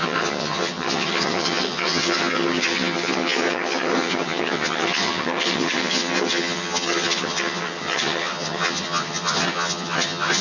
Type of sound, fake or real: fake